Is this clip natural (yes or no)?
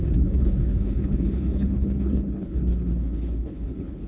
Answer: no